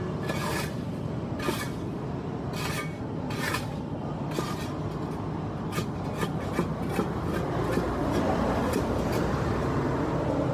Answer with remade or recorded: recorded